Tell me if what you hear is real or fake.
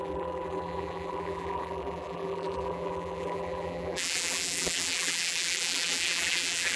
fake